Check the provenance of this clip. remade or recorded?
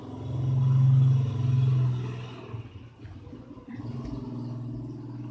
recorded